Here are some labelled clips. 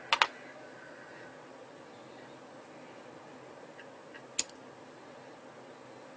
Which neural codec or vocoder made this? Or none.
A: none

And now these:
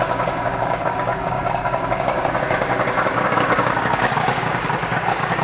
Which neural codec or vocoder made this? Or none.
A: codec, DAC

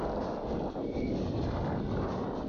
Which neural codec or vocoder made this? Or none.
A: none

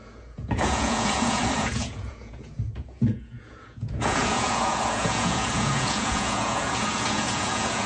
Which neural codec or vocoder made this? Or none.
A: vocoder, Vocos